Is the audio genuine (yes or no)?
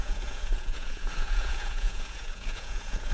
no